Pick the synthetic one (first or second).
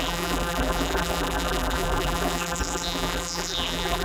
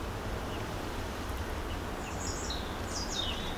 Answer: first